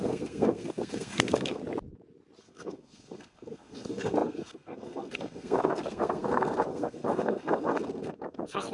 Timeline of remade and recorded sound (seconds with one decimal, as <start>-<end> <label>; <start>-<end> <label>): 0.0-1.6 remade; 1.6-2.4 recorded; 2.4-8.7 remade